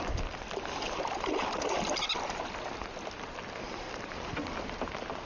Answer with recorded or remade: recorded